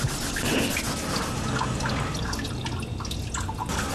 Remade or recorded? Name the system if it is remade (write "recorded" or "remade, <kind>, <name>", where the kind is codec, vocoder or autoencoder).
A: recorded